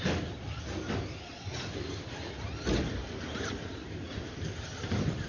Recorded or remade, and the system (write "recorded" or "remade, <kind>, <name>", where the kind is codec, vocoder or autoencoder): recorded